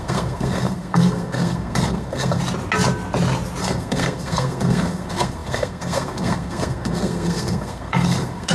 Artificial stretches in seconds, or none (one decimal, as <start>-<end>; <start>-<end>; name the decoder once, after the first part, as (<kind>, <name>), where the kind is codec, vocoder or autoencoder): 0.0-2.4 (codec, SNAC); 3.6-8.5

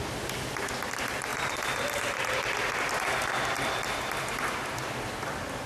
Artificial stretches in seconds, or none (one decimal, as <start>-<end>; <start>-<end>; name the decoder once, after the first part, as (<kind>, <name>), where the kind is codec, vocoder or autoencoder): none

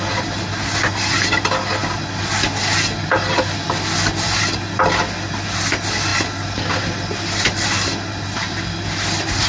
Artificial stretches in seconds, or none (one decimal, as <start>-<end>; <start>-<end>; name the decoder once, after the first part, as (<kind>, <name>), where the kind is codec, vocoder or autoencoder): none